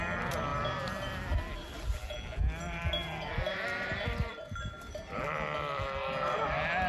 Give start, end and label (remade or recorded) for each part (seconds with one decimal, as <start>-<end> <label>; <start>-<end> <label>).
0.0-6.9 recorded